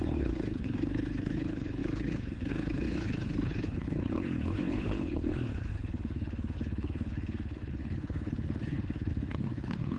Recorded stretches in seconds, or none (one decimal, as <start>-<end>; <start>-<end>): none